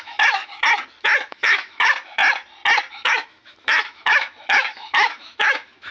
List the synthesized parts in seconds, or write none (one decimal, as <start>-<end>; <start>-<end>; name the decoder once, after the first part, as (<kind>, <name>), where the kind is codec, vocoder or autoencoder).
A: 0.0-0.6 (autoencoder, DAC-VAE); 1.3-2.2; 2.9-5.9